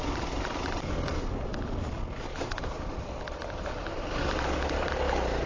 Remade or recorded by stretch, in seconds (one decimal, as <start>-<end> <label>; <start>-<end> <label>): 0.0-5.5 recorded